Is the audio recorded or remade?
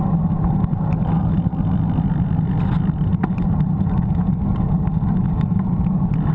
recorded